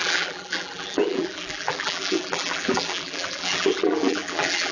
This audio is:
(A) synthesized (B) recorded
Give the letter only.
A